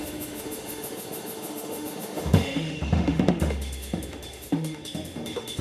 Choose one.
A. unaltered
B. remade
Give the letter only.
B